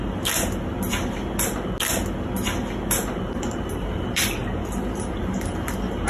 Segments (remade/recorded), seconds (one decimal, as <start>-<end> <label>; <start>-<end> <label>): 0.0-1.2 remade; 1.2-2.8 recorded; 2.8-4.4 remade; 4.4-5.2 recorded; 5.2-6.1 remade